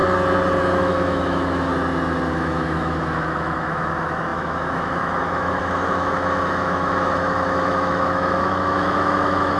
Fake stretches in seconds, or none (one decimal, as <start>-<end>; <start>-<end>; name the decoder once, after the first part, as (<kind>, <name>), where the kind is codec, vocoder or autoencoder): 0.8-1.7 (autoencoder, DAC-VAE); 2.3-9.6